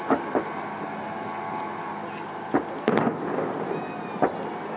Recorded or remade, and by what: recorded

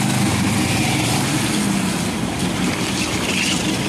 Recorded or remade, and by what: recorded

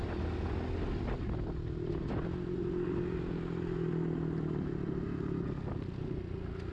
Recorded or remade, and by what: recorded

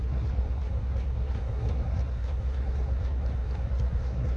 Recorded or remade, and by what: remade, codec, SNAC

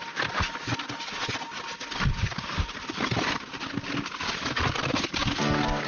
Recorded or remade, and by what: recorded